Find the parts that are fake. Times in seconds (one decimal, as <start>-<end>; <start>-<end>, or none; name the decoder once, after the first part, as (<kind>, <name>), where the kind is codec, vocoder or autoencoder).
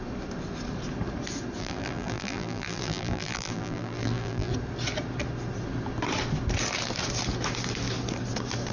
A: 1.6-4.5 (vocoder, BigVGAN v2)